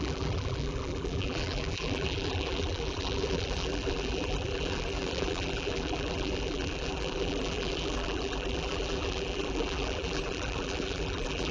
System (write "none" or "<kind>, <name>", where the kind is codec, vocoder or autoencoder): vocoder, BigVGAN v2